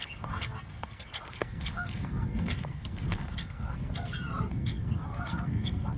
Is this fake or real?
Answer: fake